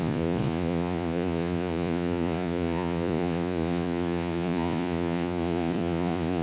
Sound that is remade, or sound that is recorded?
remade